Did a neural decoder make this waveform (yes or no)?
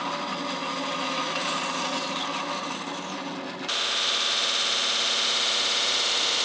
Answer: no